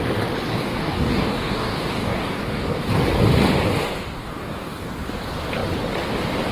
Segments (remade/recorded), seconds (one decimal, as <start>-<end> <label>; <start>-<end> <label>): 0.0-0.5 recorded; 0.5-2.9 remade; 2.9-4.2 recorded; 4.2-4.9 remade; 4.9-6.5 recorded